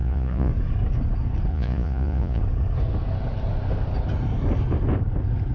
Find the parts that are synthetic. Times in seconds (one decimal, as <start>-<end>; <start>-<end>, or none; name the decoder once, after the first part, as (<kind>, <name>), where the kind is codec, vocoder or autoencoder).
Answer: 0.0-0.5 (vocoder, Vocos); 1.5-2.4